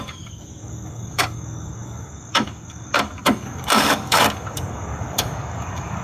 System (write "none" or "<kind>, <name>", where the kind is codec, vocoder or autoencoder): codec, DAC